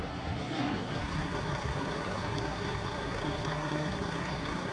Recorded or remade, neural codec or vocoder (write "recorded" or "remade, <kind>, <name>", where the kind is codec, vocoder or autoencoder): remade, codec, SNAC